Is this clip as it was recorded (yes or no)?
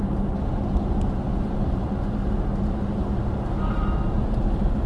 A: yes